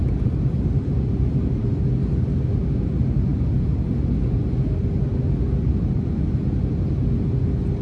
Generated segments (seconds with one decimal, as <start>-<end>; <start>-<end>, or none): 0.0-1.6; 3.3-3.9; 5.7-6.3